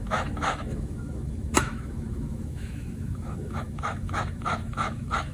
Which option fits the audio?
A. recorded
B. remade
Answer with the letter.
B